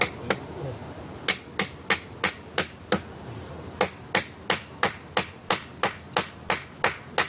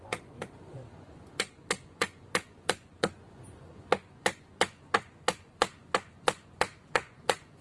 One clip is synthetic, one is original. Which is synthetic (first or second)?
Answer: second